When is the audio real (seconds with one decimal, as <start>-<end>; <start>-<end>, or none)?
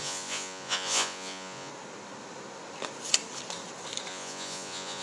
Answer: 1.7-4.1